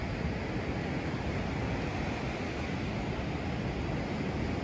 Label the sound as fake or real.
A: real